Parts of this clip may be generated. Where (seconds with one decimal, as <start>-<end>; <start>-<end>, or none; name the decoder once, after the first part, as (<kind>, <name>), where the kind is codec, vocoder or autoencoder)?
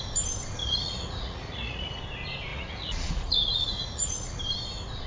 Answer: 0.6-2.0 (vocoder, Vocos); 2.5-4.4